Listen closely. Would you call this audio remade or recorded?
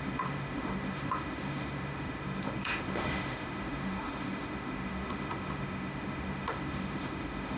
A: remade